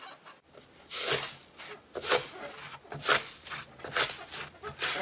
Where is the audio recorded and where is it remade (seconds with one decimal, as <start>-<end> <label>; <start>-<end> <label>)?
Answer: 0.0-5.0 recorded

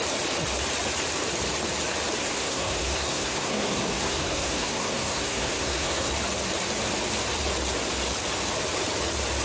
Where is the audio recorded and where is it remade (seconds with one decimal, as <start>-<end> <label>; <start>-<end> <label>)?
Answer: 0.0-2.2 recorded; 2.2-6.1 remade; 6.1-9.4 recorded

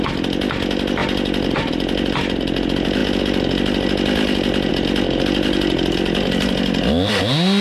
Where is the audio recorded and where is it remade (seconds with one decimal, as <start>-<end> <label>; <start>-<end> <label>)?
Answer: 0.0-7.6 recorded